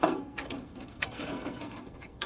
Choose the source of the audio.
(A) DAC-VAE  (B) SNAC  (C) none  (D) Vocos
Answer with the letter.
B